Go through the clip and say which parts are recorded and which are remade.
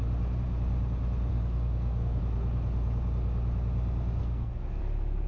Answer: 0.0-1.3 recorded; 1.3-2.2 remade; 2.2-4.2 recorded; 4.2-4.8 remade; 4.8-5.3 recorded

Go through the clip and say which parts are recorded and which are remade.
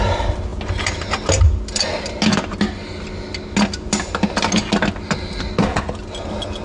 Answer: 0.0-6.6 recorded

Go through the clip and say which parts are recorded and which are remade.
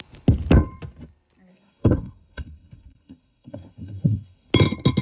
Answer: 0.0-1.5 recorded; 1.5-4.5 remade; 4.5-5.0 recorded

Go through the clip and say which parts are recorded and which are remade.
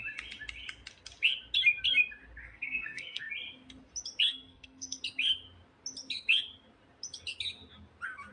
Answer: 0.0-2.4 recorded; 2.4-3.3 remade; 3.3-4.3 recorded; 4.3-5.0 remade; 5.0-8.3 recorded